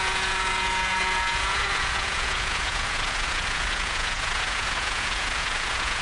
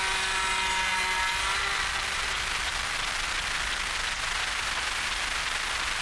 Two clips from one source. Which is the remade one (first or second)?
first